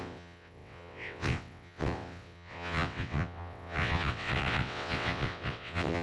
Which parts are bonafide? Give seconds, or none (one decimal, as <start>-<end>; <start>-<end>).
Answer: none